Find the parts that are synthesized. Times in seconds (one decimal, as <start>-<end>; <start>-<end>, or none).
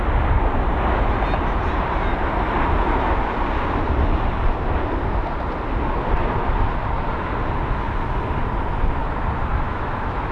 9.5-10.3